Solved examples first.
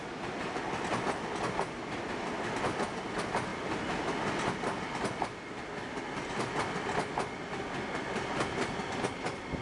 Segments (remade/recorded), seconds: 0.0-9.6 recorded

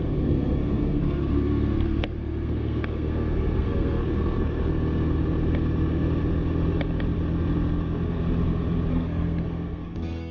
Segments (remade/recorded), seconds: 0.0-4.0 remade; 4.0-8.9 recorded; 8.9-10.3 remade

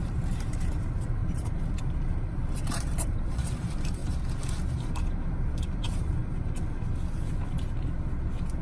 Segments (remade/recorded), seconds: 0.0-4.0 remade; 4.0-4.7 recorded; 4.7-6.2 remade; 6.2-8.6 recorded

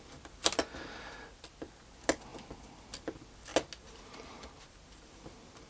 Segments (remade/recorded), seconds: 0.0-5.7 recorded

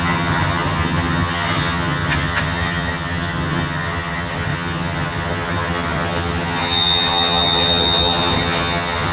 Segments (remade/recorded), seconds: 0.0-9.1 remade

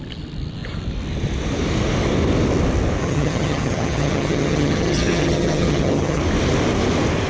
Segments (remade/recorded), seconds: 0.0-3.0 recorded; 3.0-6.2 remade; 6.2-7.3 recorded